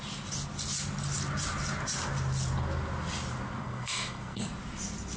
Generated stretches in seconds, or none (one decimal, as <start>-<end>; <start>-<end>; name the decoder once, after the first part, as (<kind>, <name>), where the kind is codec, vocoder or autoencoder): 3.6-4.5 (codec, SNAC)